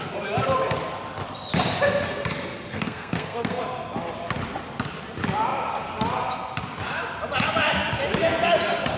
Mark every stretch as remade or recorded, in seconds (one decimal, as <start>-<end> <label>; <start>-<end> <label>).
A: 0.0-2.7 recorded; 2.7-3.6 remade; 3.6-9.0 recorded